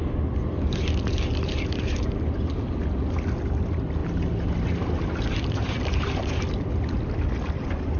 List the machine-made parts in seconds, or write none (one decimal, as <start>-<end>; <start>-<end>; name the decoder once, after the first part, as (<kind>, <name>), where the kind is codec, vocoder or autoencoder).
none